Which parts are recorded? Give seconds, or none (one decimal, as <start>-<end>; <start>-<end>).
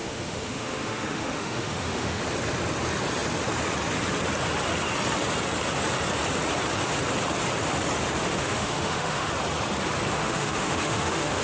2.2-8.3; 9.3-10.2